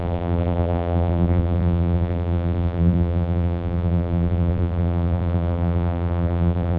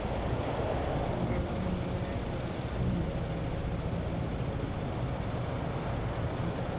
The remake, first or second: first